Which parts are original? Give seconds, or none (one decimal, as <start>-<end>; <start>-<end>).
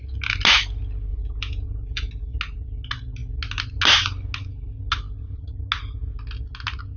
0.0-1.1; 2.1-7.0